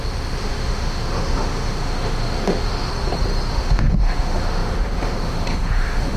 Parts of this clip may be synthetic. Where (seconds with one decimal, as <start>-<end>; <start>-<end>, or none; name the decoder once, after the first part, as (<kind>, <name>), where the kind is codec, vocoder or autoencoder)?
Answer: 0.0-2.9 (autoencoder, DAC-VAE); 3.5-6.2